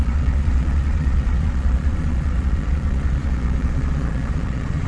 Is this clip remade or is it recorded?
remade